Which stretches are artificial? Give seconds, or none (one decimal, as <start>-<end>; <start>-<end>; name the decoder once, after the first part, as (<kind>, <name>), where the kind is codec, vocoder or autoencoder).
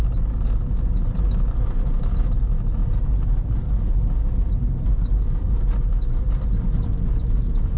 none